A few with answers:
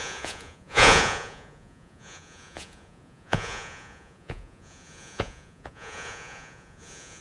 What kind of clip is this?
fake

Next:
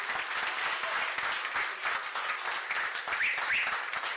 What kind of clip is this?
real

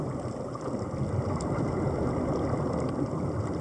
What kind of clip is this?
real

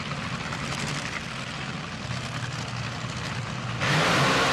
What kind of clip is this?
real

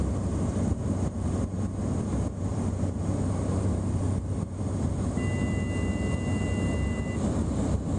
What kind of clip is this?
real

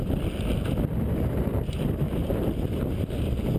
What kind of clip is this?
real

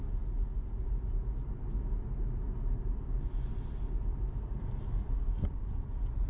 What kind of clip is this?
real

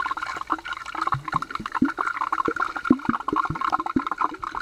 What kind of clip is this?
real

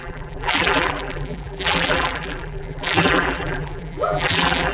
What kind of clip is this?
fake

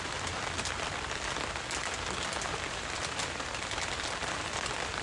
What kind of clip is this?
fake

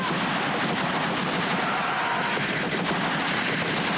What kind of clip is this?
real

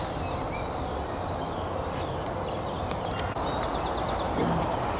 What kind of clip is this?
real